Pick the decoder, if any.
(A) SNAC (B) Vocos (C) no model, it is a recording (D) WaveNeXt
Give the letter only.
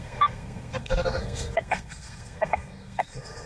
A